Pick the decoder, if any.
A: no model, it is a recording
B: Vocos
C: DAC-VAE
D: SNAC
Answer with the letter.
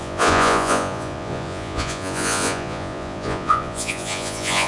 B